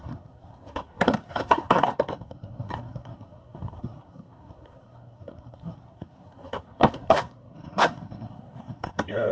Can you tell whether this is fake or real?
fake